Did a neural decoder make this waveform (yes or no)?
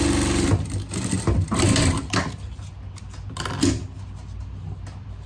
no